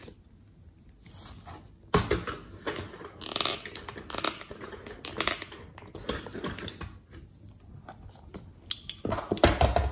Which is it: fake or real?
real